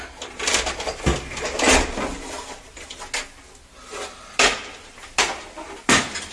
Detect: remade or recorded recorded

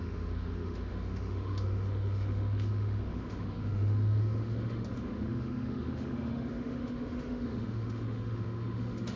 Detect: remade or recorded remade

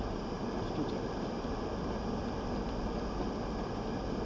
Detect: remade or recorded recorded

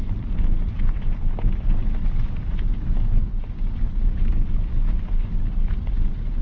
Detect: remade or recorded recorded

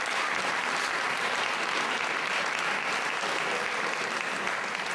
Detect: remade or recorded recorded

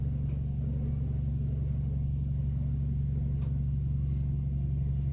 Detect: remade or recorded recorded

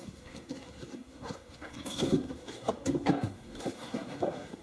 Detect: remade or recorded remade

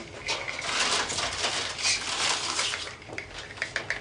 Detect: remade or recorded recorded